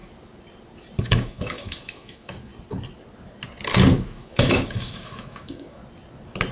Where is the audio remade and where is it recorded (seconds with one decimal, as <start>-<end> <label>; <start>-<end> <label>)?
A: 0.0-1.0 recorded; 1.0-2.5 remade; 2.5-3.9 recorded; 3.9-5.8 remade; 5.8-6.5 recorded